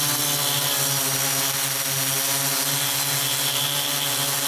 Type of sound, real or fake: real